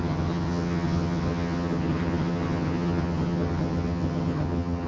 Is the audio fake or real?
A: fake